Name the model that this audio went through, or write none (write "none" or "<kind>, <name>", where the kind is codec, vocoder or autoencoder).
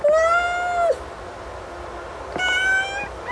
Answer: none